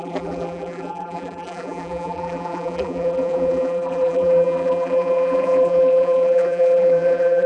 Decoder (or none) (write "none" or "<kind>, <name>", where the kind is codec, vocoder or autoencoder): vocoder, BigVGAN v2